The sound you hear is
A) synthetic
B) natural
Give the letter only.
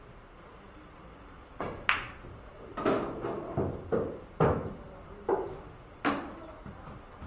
B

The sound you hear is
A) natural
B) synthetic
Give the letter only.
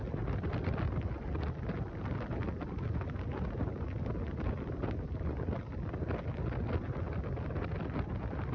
A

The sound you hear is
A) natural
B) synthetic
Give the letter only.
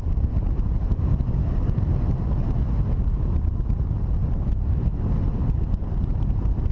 A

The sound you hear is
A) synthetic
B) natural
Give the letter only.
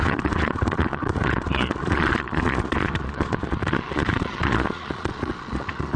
A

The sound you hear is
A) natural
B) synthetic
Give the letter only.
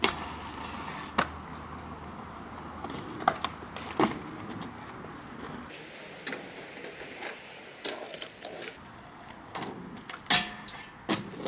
A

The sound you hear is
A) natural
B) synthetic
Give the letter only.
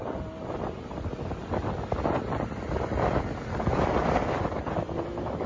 A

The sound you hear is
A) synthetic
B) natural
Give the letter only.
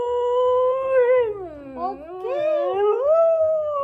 B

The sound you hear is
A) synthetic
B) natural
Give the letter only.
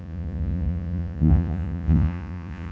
A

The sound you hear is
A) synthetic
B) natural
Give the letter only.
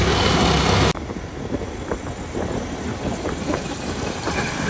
B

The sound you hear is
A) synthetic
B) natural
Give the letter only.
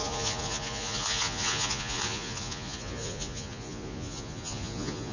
A